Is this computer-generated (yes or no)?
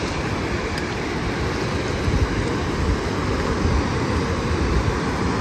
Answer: no